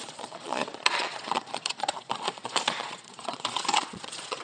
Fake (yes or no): yes